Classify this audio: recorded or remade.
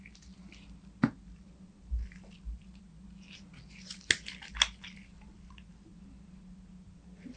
recorded